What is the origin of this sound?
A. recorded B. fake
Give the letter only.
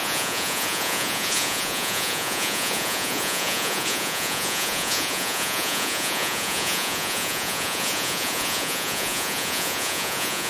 B